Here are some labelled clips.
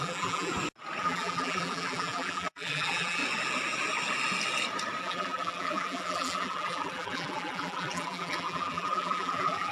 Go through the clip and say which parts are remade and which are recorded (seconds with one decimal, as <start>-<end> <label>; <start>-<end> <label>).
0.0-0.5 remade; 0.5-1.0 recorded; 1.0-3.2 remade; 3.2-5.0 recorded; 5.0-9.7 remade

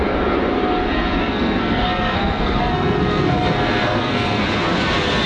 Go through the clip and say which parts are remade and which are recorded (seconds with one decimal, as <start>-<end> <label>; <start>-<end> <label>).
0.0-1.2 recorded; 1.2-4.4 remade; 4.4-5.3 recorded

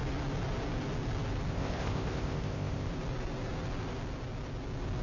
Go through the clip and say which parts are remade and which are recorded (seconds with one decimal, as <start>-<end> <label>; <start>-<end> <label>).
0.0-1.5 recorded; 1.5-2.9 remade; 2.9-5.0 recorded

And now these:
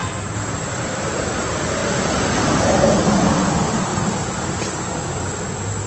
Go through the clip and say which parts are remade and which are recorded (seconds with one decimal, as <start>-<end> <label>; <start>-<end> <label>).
0.0-1.0 remade; 1.0-1.8 recorded; 1.8-2.6 remade; 2.6-3.9 recorded; 3.9-5.4 remade; 5.4-5.9 recorded

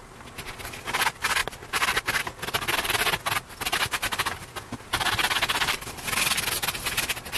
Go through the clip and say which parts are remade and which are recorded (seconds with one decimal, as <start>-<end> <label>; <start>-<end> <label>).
0.0-7.4 recorded

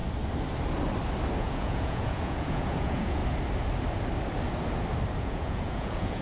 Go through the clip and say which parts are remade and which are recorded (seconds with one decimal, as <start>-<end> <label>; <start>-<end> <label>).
0.0-1.4 recorded; 1.4-3.2 remade; 3.2-5.2 recorded; 5.2-6.2 remade